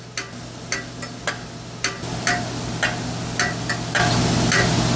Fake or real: real